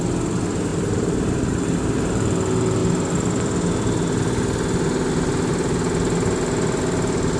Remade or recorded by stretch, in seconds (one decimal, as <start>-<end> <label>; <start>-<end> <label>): 0.0-0.7 recorded; 0.7-2.0 remade; 2.0-7.4 recorded